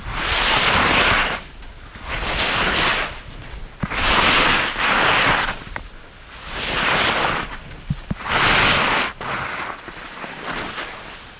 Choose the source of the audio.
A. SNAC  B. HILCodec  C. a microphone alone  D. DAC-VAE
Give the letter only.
C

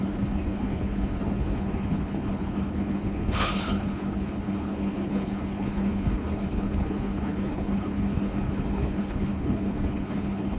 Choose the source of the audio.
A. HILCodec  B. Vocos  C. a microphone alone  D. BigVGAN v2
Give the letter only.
A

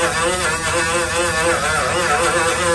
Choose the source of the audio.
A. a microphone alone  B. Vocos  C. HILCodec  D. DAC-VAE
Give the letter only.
A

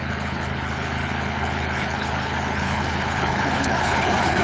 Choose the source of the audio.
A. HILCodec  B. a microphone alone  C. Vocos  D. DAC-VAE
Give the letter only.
A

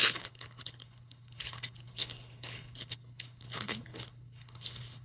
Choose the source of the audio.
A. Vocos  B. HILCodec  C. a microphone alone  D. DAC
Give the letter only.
B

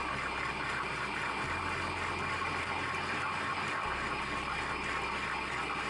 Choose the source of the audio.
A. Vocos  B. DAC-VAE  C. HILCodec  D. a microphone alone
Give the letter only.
D